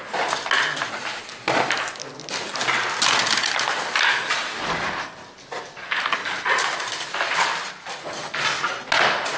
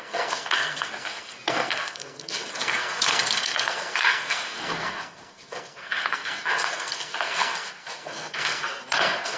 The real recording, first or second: first